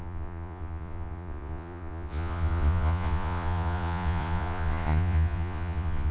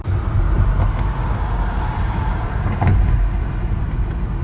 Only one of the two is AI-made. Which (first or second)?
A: first